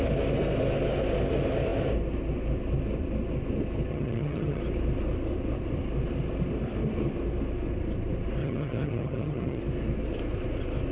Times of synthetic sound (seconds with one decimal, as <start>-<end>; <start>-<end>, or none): 3.9-4.6; 8.4-9.6